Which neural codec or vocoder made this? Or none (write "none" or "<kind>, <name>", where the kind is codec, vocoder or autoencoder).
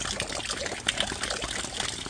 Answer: none